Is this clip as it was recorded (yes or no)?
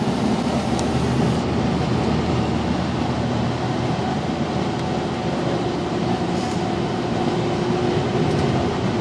yes